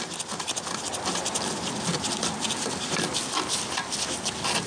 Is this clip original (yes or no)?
yes